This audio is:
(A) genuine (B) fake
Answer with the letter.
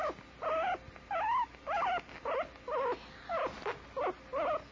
A